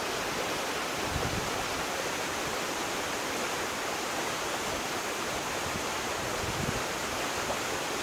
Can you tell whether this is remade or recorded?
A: recorded